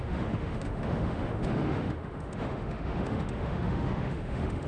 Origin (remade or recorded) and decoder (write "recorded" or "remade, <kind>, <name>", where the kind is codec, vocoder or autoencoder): remade, autoencoder, DAC-VAE